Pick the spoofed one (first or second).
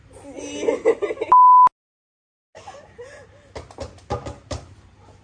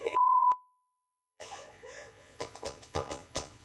second